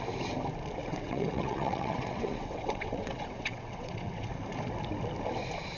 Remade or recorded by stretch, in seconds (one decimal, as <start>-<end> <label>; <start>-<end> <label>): 0.0-0.8 recorded; 0.8-4.3 remade; 4.3-5.8 recorded